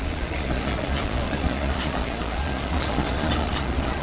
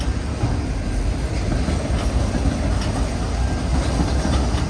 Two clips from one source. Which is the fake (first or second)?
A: first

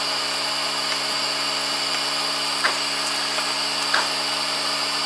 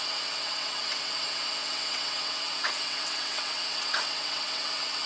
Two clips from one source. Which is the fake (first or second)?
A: second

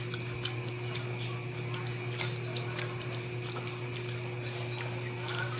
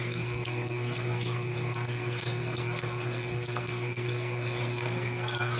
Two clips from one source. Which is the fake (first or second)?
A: second